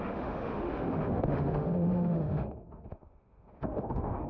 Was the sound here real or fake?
fake